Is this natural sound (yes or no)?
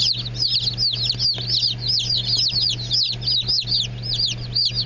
yes